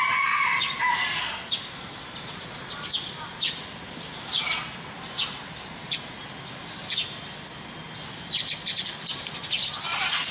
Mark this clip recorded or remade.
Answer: recorded